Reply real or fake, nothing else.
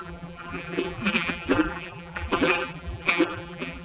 fake